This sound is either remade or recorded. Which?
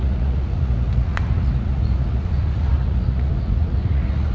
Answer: remade